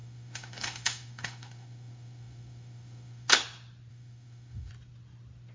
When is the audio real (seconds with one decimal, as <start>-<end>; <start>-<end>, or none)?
3.3-3.9; 4.7-5.5